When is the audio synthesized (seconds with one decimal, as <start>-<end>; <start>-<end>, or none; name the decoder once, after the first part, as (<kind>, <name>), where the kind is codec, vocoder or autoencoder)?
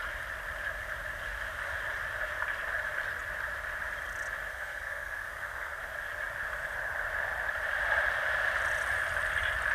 4.5-5.8 (codec, SNAC)